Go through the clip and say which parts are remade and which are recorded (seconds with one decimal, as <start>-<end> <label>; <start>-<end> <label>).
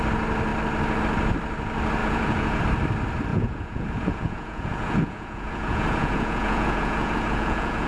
0.0-2.0 recorded; 2.0-2.6 remade; 2.6-3.3 recorded; 3.3-7.9 remade